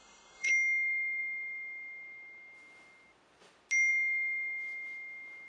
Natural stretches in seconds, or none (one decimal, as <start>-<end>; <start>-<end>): 0.5-5.5